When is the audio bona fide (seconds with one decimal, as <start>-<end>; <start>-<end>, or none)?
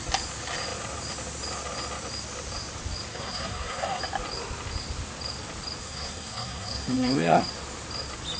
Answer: 0.0-3.1; 4.0-5.8; 7.4-8.4